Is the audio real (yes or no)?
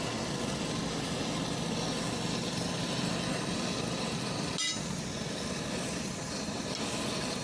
yes